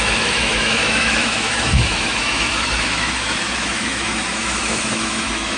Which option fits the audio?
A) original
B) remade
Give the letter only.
B